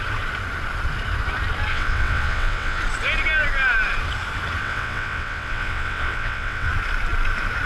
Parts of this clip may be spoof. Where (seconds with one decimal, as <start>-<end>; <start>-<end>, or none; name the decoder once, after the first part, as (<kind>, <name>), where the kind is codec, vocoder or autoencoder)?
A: 1.7-2.8 (vocoder, WaveNeXt); 4.6-6.7